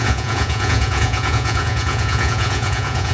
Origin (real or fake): fake